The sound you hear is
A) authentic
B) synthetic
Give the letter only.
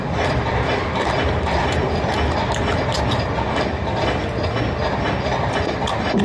A